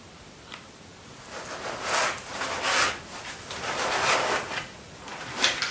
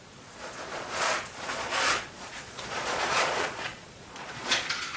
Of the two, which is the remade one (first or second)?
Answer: second